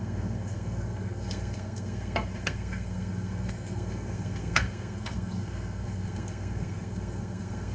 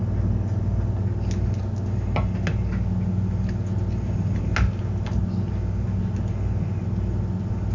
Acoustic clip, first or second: second